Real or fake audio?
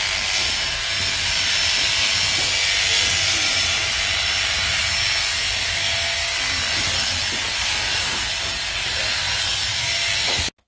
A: real